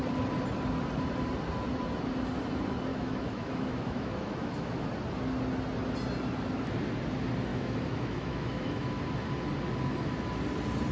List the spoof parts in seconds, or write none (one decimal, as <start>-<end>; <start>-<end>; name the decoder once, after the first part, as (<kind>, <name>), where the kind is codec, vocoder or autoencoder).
2.9-4.9 (autoencoder, DAC-VAE); 7.5-9.0